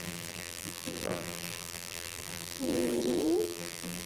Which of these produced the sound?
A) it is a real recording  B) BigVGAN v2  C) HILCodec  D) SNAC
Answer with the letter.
B